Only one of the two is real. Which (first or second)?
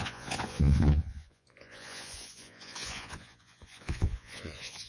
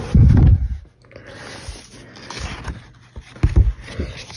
second